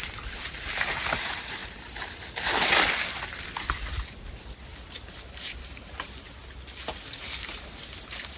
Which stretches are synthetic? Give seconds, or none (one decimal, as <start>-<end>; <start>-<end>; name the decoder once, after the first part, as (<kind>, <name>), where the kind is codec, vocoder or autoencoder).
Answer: 0.0-1.6 (vocoder, BigVGAN v2); 5.6-6.4; 7.2-8.4